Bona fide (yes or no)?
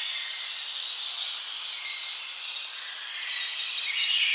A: yes